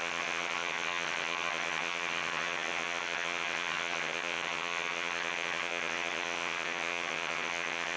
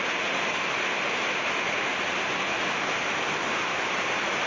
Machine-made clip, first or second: first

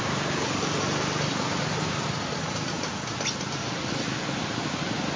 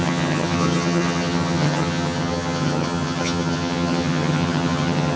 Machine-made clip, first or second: second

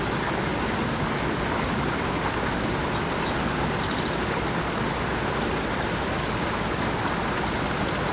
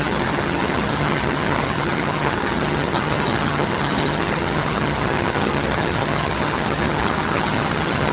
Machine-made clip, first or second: second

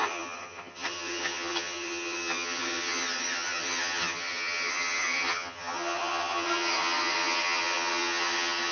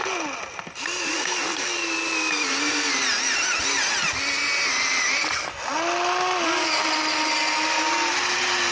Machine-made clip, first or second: first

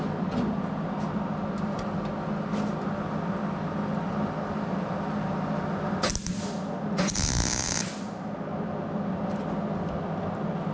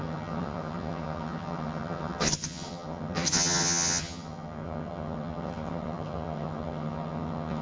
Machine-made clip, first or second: second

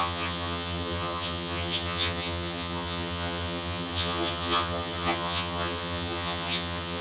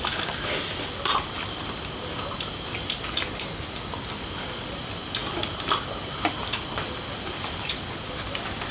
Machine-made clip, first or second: first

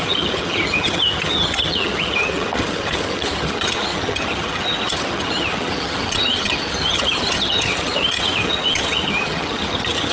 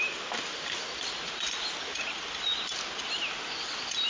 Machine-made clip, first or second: first